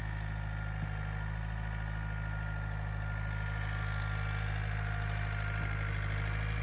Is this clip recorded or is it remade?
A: recorded